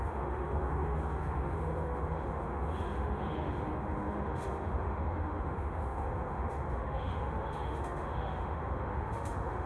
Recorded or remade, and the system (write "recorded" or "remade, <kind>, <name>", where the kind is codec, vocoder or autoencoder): remade, autoencoder, DAC-VAE